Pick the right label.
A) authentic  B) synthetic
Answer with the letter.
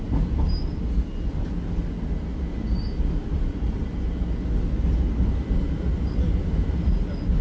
A